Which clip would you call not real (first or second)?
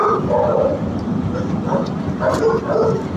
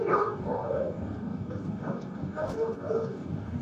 second